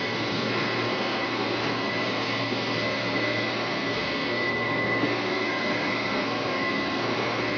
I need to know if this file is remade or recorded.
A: remade